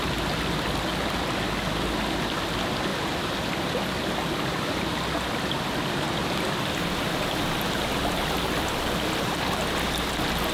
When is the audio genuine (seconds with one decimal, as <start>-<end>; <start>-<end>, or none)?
0.0-10.5